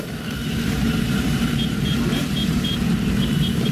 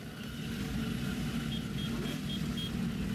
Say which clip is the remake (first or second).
first